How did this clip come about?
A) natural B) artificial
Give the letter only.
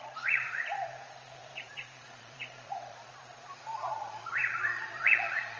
B